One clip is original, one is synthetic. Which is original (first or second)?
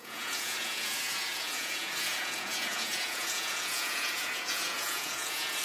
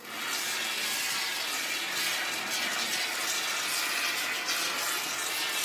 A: second